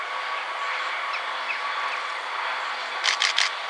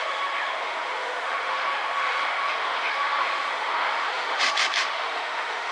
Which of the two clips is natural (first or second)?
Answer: first